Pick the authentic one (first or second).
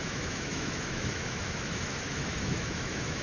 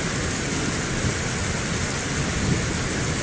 second